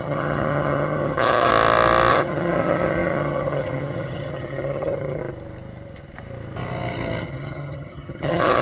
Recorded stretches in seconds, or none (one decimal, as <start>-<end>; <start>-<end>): 1.5-2.1; 5.2-7.2